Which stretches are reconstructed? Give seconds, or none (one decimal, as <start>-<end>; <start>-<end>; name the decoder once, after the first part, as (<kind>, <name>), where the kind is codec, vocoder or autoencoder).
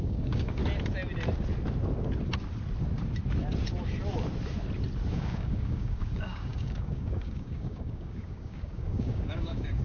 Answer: 0.0-0.6 (codec, DAC); 5.1-9.8